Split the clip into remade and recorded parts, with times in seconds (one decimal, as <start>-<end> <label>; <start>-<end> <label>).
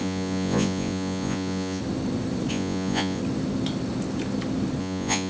0.0-1.8 remade; 1.8-2.5 recorded; 2.5-3.2 remade; 3.2-4.8 recorded; 4.8-5.3 remade